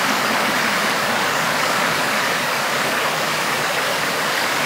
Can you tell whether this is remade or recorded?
remade